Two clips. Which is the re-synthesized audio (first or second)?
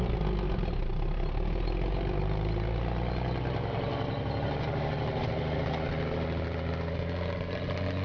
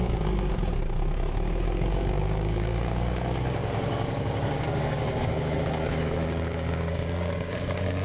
second